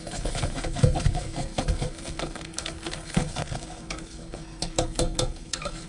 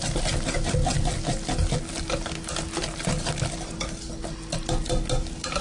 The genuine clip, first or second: second